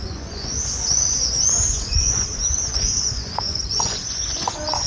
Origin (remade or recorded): remade